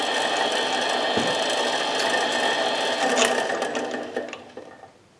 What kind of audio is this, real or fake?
real